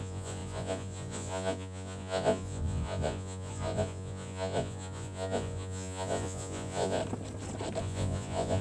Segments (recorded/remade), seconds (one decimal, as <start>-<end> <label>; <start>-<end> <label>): 0.0-7.0 remade; 7.0-7.8 recorded; 7.8-8.6 remade

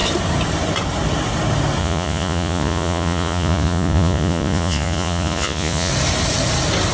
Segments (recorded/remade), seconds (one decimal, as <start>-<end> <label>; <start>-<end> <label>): 0.0-1.8 recorded; 1.8-5.9 remade; 5.9-6.9 recorded